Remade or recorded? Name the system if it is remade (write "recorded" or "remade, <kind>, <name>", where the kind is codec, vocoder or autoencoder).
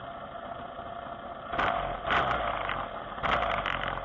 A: recorded